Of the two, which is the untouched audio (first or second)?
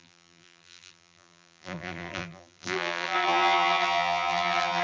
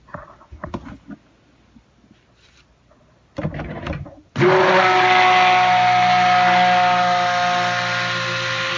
second